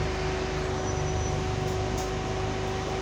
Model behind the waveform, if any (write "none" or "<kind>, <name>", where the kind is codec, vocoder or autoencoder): none